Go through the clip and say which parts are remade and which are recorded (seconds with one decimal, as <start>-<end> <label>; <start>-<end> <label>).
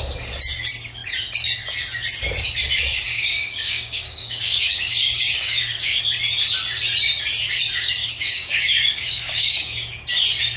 0.0-3.1 recorded; 3.1-6.0 remade; 6.0-8.0 recorded; 8.0-9.9 remade; 9.9-10.6 recorded